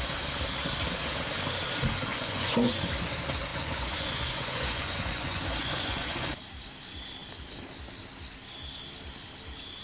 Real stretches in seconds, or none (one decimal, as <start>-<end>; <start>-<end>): 0.0-2.1; 2.8-3.5; 6.3-9.8